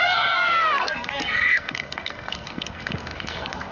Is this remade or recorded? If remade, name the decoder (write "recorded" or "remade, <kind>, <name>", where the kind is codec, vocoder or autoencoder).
remade, codec, SNAC